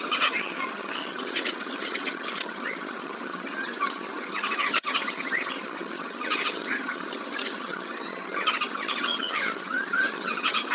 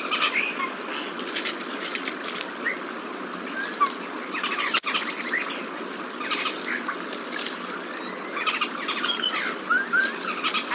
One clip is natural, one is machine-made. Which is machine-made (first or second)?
first